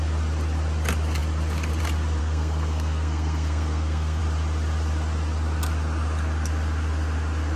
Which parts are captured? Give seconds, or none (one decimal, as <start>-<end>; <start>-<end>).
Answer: 0.0-2.2; 4.2-7.6

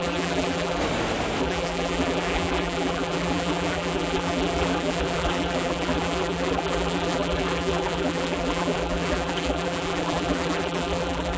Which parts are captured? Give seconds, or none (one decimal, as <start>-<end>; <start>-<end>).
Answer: 0.8-1.4

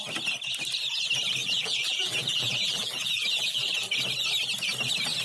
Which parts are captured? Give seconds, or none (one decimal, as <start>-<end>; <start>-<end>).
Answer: 0.0-1.4; 3.9-5.2

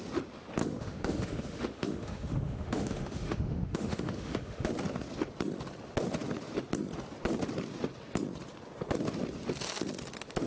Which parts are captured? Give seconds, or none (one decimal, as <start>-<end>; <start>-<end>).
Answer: 0.0-0.6; 4.7-10.5

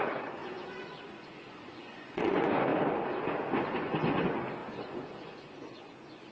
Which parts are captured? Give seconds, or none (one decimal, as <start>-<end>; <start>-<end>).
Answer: 2.7-3.8